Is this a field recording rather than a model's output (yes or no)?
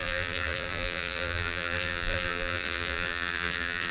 no